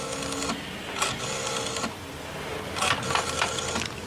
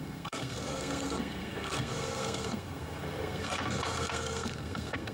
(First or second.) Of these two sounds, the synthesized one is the second